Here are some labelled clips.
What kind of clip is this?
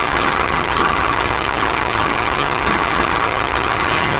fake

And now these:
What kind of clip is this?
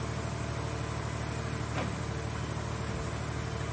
real